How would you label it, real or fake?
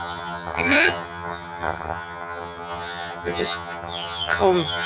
fake